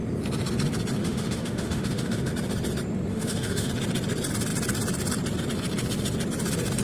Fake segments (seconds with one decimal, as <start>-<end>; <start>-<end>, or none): 1.0-2.3; 3.1-3.7